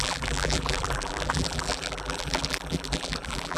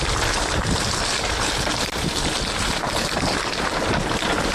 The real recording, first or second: second